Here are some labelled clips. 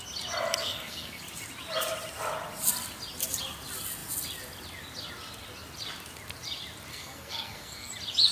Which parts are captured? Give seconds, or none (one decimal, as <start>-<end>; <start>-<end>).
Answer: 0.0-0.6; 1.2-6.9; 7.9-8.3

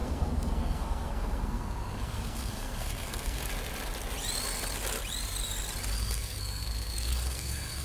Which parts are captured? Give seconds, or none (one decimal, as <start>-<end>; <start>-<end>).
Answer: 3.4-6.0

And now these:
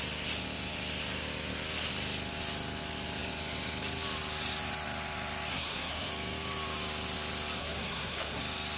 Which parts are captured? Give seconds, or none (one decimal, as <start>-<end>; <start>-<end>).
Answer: 0.0-5.5; 6.1-7.6; 8.4-8.8

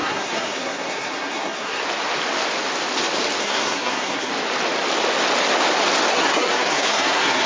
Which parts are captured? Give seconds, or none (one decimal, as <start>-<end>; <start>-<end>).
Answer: 1.8-3.4; 4.3-6.1

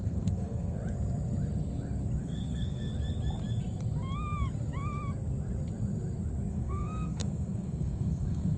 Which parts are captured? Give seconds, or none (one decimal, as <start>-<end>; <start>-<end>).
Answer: 0.8-2.2; 2.9-6.5